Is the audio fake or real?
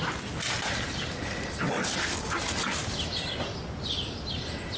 real